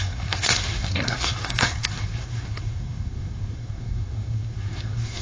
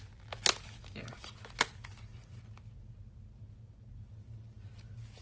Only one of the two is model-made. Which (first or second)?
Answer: first